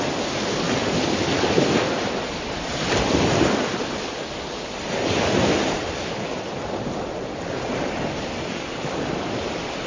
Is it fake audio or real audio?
real